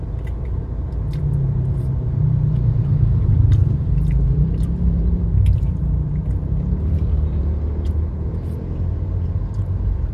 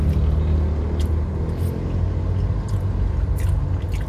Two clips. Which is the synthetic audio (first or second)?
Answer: first